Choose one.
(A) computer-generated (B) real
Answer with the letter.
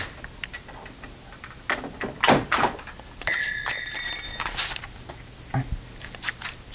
B